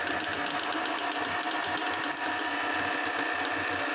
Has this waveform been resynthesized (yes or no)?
no